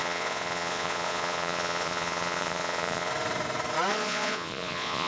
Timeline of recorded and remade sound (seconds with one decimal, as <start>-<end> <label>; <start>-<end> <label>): 0.0-3.1 remade; 3.1-3.9 recorded; 3.9-5.1 remade